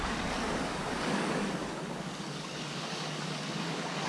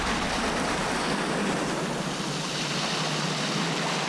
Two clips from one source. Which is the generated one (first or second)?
first